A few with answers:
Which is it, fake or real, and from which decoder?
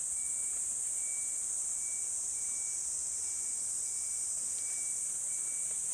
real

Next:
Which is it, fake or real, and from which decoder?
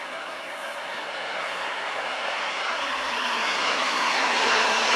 fake, codec, SNAC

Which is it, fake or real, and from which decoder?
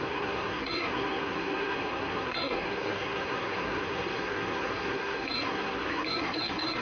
fake, codec, SNAC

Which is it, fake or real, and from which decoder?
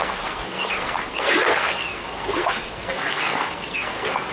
fake, codec, SNAC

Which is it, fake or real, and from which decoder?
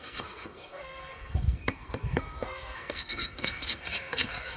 fake, codec, SNAC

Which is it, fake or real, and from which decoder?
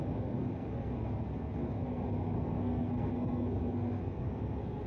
fake, codec, SNAC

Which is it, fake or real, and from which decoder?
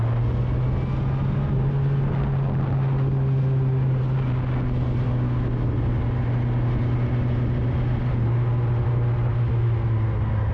real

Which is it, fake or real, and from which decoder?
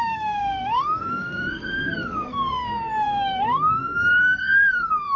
fake, codec, SNAC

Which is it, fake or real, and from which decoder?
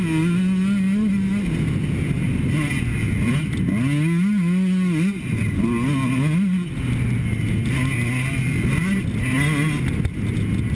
real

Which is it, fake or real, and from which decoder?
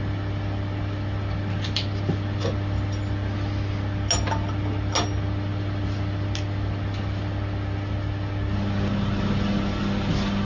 real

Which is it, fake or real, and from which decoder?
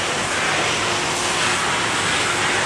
real